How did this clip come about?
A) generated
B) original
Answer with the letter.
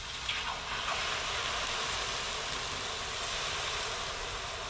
B